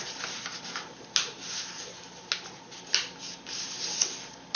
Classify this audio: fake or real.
real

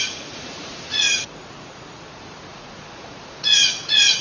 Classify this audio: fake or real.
fake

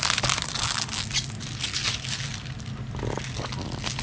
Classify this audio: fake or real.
real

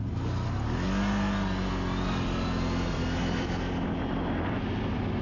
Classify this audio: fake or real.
real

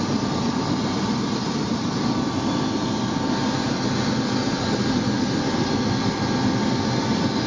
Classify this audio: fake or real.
real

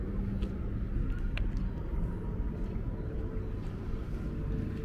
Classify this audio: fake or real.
real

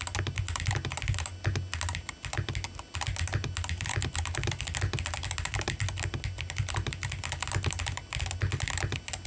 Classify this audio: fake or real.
real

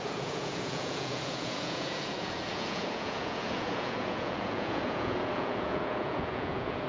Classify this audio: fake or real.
fake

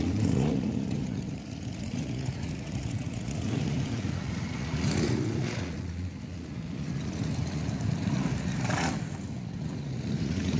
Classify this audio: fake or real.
fake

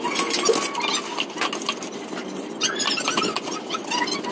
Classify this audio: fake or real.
real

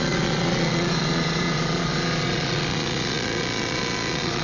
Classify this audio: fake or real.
fake